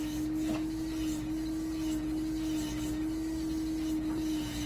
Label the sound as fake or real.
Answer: real